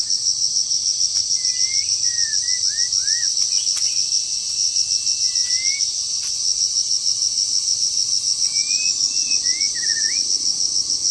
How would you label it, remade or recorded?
recorded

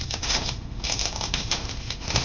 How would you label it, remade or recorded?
remade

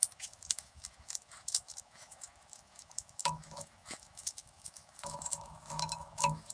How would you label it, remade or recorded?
remade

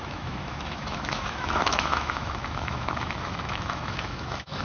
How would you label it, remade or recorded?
remade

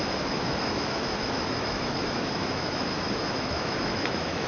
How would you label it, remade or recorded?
remade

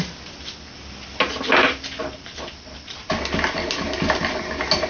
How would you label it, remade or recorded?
recorded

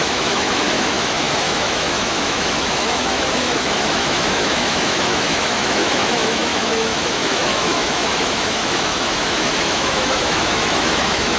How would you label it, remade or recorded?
remade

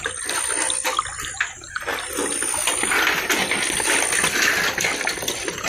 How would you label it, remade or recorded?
recorded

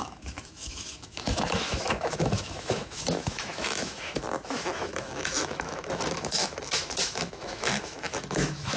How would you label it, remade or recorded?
remade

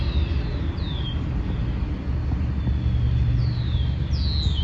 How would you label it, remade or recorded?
recorded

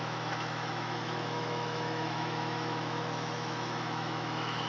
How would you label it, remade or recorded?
remade